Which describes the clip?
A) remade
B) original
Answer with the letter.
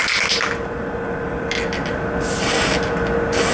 B